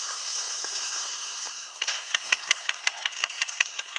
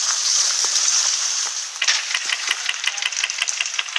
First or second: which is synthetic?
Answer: first